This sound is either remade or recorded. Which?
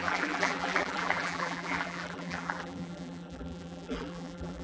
remade